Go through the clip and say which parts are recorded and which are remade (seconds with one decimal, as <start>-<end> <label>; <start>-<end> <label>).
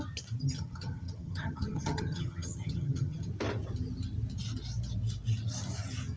0.0-0.4 recorded; 0.4-3.3 remade; 3.3-6.2 recorded